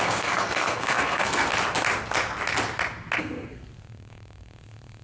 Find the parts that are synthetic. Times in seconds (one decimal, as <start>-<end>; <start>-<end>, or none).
0.0-1.5; 3.2-5.0